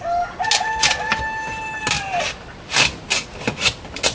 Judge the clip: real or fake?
real